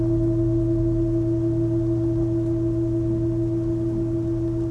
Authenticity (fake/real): real